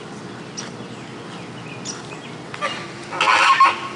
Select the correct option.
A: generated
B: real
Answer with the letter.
B